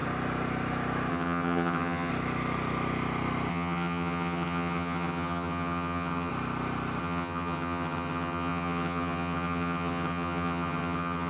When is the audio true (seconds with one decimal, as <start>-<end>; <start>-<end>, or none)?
0.0-1.1; 2.1-3.5; 6.3-7.0